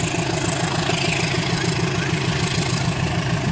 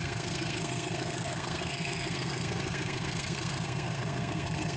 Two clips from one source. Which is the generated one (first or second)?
second